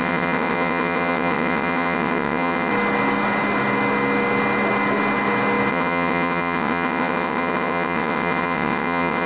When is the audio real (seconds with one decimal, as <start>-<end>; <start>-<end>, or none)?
2.7-5.7